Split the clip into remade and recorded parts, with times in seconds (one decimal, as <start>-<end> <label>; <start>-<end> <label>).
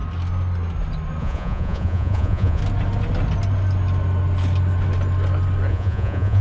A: 0.0-1.2 recorded; 1.2-2.6 remade; 2.6-5.7 recorded; 5.7-6.4 remade